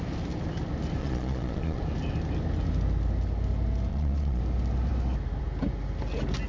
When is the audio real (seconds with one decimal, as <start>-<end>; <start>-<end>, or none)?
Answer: 0.0-1.0; 1.8-3.9; 4.4-6.5